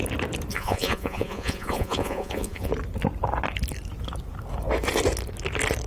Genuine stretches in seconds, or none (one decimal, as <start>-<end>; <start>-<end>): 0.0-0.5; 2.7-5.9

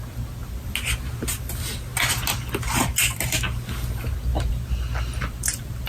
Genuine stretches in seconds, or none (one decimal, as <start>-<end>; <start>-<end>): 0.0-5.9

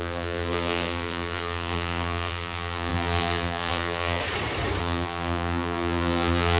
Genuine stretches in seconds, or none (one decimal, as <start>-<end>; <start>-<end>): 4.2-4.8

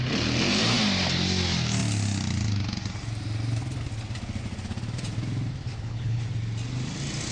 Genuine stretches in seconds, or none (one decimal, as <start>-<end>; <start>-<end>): 0.0-5.7; 6.2-7.3